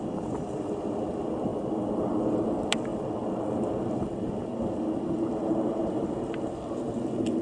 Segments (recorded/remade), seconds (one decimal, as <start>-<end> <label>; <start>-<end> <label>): 0.0-7.4 recorded